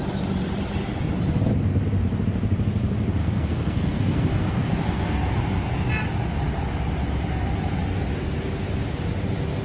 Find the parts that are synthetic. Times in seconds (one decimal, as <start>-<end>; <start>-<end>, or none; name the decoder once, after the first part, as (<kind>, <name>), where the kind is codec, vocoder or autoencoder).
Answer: 3.2-5.3 (codec, SNAC)